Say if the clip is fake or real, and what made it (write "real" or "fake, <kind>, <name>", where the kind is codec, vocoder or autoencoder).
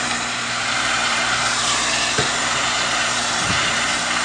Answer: fake, vocoder, BigVGAN v2